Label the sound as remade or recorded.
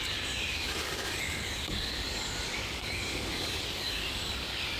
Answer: remade